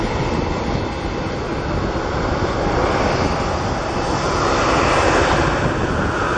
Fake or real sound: real